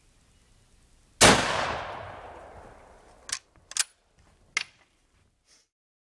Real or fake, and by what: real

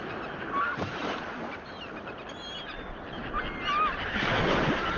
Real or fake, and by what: real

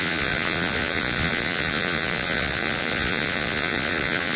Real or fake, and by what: fake, vocoder, Vocos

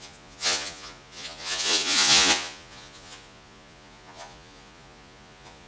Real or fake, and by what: fake, vocoder, Vocos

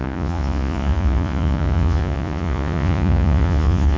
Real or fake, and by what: fake, vocoder, Vocos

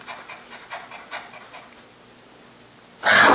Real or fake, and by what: real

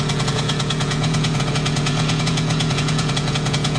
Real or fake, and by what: fake, vocoder, Vocos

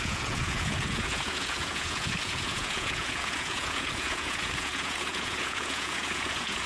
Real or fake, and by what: fake, vocoder, Vocos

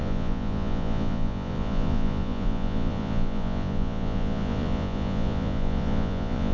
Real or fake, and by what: fake, vocoder, Vocos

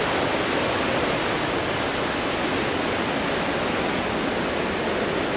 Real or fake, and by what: real